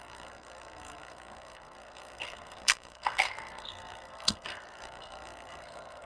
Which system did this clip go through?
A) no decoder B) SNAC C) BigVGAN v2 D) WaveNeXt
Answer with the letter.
B